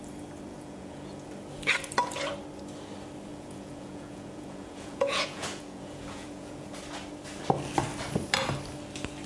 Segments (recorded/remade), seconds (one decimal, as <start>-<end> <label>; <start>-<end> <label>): 0.0-0.5 recorded; 0.5-1.3 remade; 1.3-3.3 recorded; 3.3-6.8 remade; 6.8-9.3 recorded